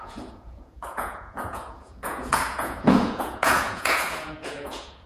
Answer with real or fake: fake